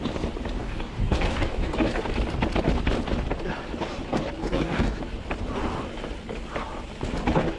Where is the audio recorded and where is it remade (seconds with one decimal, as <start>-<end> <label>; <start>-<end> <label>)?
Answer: 0.0-0.6 recorded; 0.6-2.0 remade; 2.0-4.4 recorded; 4.4-5.0 remade; 5.0-7.6 recorded